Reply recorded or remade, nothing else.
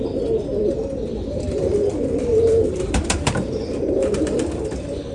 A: remade